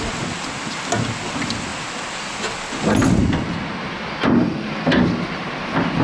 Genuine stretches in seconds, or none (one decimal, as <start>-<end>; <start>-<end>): 0.0-6.0